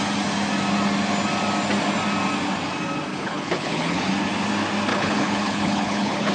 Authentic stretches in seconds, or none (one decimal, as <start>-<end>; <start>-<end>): 0.0-3.1; 4.1-4.9